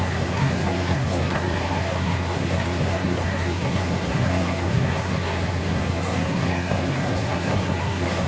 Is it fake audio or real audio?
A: fake